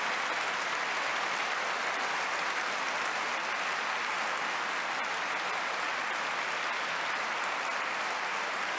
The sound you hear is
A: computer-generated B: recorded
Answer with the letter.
B